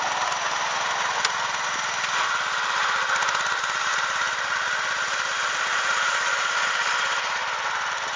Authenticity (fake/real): real